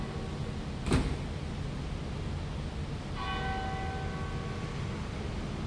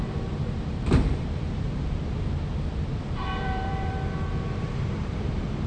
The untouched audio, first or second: first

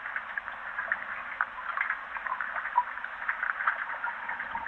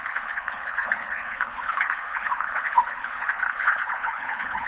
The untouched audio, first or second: first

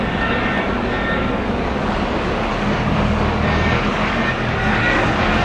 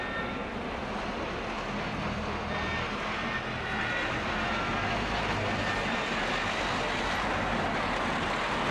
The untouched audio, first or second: second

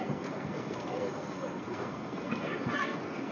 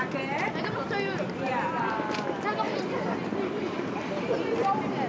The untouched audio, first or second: second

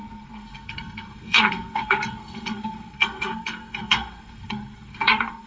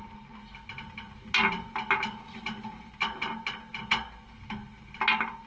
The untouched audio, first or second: second